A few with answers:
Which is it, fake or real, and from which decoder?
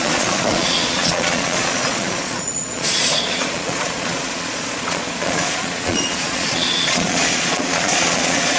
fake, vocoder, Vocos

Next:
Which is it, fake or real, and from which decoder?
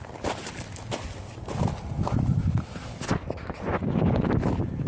real